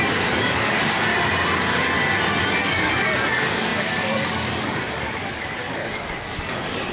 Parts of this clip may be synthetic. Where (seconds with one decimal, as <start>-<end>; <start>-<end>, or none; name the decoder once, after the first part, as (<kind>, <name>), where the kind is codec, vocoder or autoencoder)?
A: 0.0-1.1 (codec, DAC); 2.4-6.9